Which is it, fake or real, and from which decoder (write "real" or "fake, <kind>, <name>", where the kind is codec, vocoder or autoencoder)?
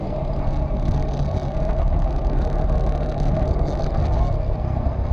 fake, codec, SNAC